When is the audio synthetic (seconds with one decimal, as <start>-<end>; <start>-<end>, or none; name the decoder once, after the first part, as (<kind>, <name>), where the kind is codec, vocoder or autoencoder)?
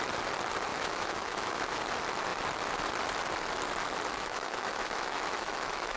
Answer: 0.7-1.8 (autoencoder, DAC-VAE); 4.1-6.0